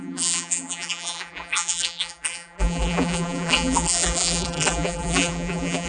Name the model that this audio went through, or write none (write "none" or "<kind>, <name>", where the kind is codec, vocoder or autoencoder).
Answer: vocoder, BigVGAN v2